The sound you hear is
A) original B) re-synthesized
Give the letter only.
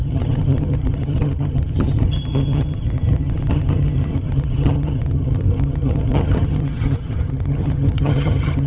B